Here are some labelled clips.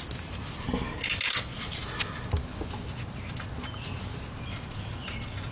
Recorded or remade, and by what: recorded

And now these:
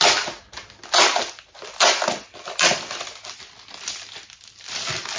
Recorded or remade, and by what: recorded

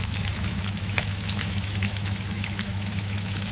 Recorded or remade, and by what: remade, autoencoder, DAC-VAE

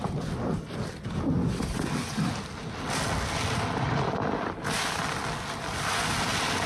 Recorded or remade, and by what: recorded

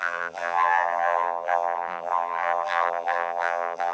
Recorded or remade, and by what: remade, vocoder, BigVGAN v2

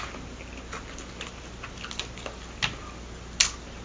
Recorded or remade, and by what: recorded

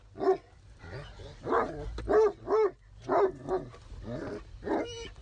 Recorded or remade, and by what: recorded